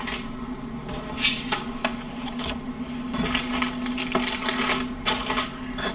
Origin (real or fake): real